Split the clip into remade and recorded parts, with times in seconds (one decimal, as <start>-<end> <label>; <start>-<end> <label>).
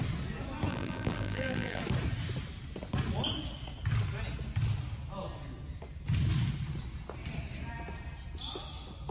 0.0-0.7 recorded; 0.7-1.8 remade; 1.8-9.1 recorded